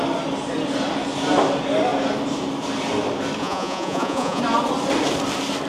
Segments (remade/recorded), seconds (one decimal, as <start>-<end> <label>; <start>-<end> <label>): 0.0-3.4 recorded; 3.4-4.4 remade; 4.4-5.7 recorded